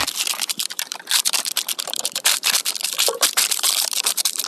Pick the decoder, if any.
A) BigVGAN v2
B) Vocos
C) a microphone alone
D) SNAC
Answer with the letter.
A